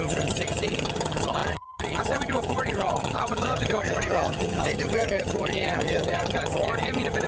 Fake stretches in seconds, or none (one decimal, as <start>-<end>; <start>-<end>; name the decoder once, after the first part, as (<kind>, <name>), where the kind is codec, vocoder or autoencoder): 0.0-7.3 (vocoder, HiFi-GAN)